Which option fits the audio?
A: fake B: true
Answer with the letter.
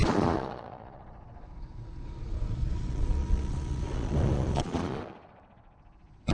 A